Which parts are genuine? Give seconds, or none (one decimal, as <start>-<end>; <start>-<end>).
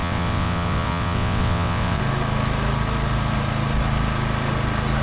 2.0-5.0